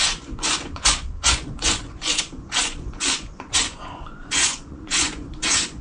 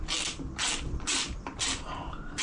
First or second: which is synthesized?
first